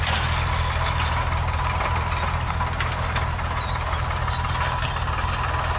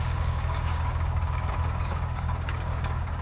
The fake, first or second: second